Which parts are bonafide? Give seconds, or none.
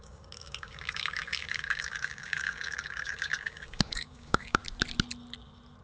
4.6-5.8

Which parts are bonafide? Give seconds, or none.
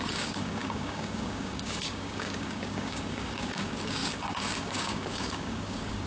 none